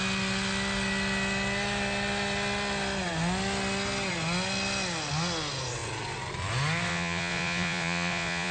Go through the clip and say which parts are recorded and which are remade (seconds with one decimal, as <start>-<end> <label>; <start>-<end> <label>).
0.0-6.9 recorded; 6.9-8.5 remade